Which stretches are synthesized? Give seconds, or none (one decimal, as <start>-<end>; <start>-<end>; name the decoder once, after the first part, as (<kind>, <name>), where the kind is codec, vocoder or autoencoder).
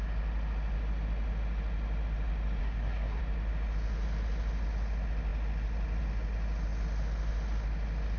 2.6-3.2 (codec, SNAC)